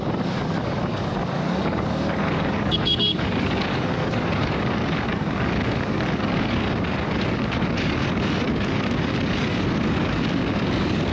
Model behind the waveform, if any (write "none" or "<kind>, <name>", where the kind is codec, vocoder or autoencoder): codec, DAC